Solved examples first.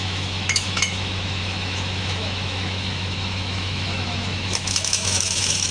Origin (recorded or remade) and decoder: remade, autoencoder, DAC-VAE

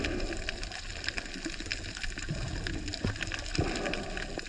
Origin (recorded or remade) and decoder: recorded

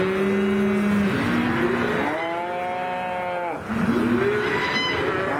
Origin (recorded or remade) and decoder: recorded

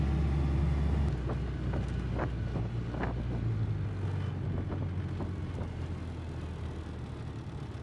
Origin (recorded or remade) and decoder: recorded